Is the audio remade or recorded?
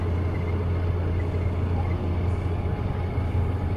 recorded